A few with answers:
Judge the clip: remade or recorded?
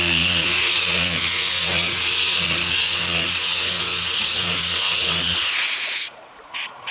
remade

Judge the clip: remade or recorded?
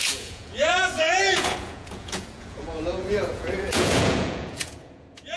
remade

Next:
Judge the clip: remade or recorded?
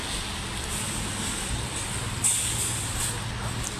recorded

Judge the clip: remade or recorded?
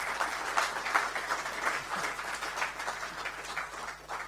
recorded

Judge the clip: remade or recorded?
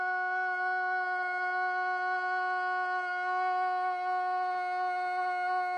recorded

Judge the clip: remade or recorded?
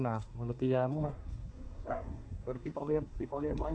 remade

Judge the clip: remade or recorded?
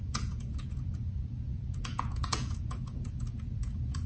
remade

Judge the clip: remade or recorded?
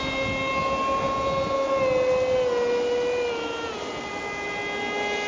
recorded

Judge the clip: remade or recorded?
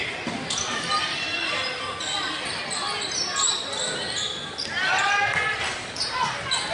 recorded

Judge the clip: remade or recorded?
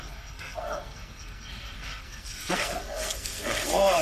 remade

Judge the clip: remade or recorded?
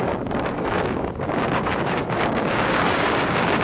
remade